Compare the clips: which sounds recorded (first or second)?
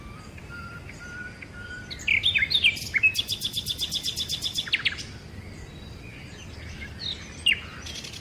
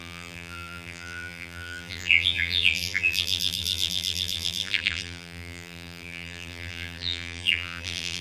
first